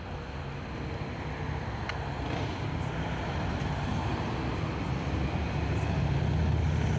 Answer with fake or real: real